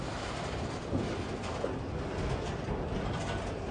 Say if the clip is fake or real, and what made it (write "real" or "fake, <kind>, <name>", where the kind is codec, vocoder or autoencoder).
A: real